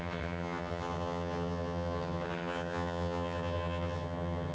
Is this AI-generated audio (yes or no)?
yes